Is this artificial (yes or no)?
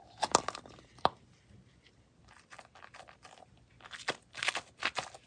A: no